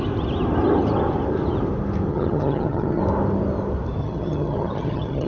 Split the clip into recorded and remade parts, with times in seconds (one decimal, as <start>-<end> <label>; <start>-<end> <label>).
0.0-2.1 recorded; 2.1-3.0 remade; 3.0-4.0 recorded; 4.0-5.3 remade